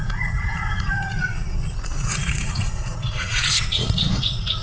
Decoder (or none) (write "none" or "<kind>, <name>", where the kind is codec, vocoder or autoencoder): vocoder, Vocos